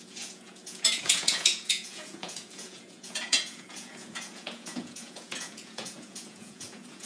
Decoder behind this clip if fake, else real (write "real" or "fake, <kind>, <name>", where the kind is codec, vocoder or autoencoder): fake, vocoder, Vocos